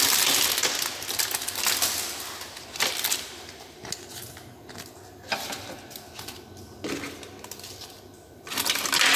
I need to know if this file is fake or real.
real